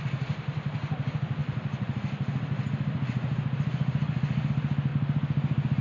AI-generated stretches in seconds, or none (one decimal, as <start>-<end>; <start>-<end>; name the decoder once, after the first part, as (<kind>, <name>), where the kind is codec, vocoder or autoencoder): none